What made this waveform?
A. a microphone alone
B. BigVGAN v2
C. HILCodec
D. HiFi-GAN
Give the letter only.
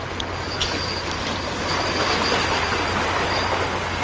A